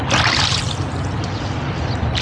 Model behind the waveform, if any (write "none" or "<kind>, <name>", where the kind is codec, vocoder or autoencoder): none